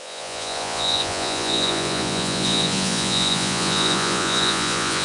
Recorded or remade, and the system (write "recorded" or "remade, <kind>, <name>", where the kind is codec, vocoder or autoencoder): remade, vocoder, Vocos